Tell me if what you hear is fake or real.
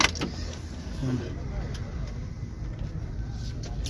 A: real